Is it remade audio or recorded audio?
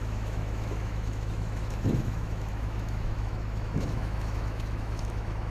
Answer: remade